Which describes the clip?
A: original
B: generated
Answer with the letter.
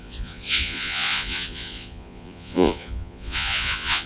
B